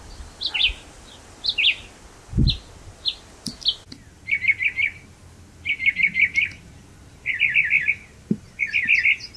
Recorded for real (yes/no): yes